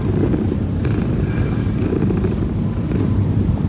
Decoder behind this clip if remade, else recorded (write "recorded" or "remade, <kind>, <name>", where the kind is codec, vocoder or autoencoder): remade, vocoder, BigVGAN v2